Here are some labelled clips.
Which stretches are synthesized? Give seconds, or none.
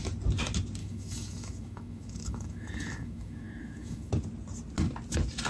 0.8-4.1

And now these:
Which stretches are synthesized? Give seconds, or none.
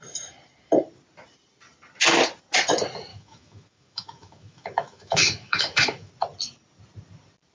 3.1-6.1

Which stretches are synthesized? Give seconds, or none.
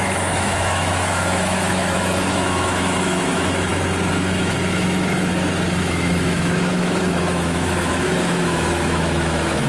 0.0-3.7; 4.4-5.3; 5.8-9.7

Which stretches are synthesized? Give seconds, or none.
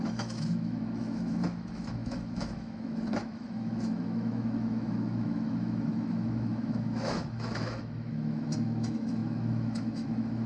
0.0-10.5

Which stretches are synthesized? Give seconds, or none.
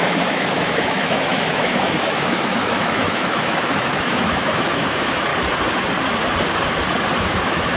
0.0-5.3; 7.2-7.8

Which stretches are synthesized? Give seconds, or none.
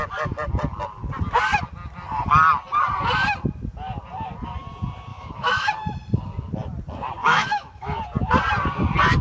5.1-5.7; 7.2-8.0